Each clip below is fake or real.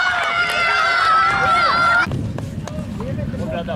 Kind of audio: real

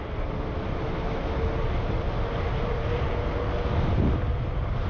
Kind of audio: real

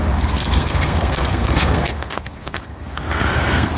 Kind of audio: fake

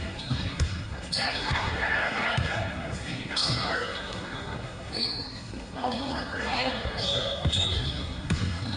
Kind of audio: fake